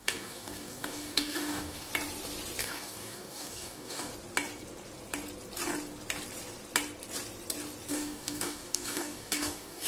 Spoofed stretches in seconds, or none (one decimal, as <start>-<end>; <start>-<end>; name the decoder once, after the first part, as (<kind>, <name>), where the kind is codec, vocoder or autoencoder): 0.0-1.9 (codec, DAC); 2.6-4.1; 7.9-9.9